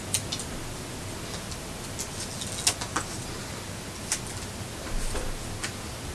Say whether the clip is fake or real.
real